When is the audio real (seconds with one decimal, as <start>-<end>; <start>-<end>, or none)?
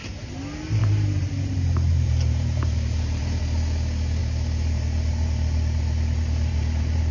0.0-0.8; 3.4-4.2